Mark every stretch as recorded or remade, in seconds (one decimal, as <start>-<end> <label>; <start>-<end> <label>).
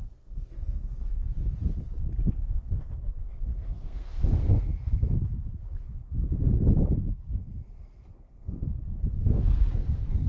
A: 0.0-1.4 remade; 1.4-2.3 recorded; 2.3-4.7 remade; 4.7-8.1 recorded; 8.1-8.6 remade; 8.6-9.1 recorded; 9.1-10.3 remade